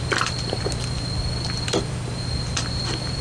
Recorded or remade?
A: recorded